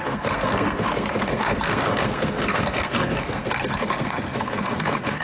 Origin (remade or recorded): remade